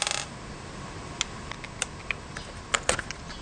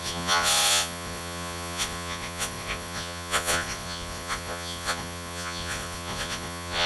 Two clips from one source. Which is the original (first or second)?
first